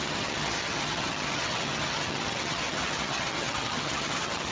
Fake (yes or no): yes